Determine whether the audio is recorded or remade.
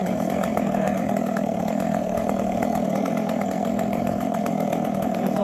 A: remade